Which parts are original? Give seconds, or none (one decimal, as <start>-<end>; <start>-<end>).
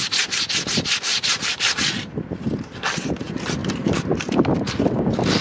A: 0.0-1.1; 1.8-3.6; 4.5-5.4